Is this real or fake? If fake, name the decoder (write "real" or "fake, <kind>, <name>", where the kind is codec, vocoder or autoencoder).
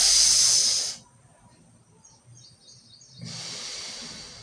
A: real